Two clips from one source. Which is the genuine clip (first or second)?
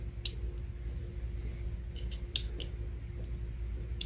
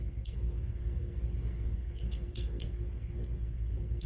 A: first